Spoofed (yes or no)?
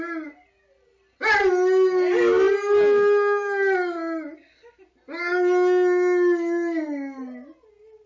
no